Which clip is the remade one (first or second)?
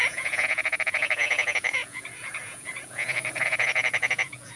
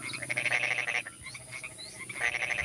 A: first